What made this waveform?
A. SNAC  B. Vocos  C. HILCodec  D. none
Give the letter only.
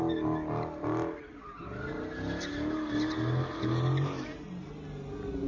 D